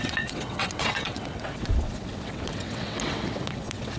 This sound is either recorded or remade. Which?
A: remade